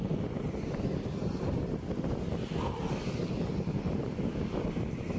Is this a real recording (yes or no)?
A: yes